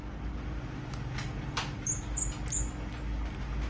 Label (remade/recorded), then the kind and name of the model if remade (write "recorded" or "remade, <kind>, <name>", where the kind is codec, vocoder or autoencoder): recorded